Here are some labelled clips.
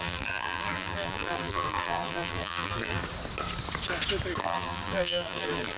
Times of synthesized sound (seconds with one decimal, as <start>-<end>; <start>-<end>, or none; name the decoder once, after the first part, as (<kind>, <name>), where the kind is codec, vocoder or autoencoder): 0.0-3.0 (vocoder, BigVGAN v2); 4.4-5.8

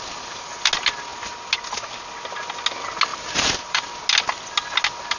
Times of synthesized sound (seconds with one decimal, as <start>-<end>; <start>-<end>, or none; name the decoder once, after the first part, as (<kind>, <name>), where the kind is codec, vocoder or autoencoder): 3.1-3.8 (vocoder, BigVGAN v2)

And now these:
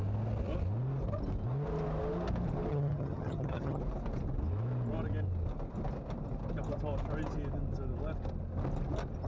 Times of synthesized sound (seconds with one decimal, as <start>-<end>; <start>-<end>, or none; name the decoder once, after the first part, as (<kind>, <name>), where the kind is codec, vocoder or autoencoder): 2.7-3.8 (vocoder, HiFi-GAN)

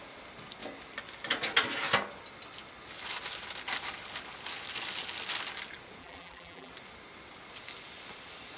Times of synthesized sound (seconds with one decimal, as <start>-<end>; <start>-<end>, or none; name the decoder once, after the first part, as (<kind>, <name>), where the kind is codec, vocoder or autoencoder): 6.0-6.7 (vocoder, BigVGAN v2)